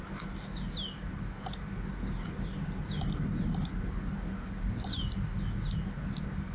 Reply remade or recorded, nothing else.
recorded